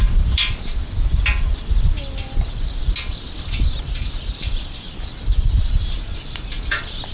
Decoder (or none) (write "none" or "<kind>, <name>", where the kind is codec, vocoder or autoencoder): none